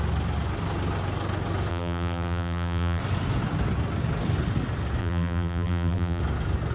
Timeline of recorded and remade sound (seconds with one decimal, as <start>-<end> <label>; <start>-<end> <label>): 0.0-1.7 recorded; 1.7-3.0 remade; 3.0-5.0 recorded; 5.0-6.2 remade; 6.2-6.7 recorded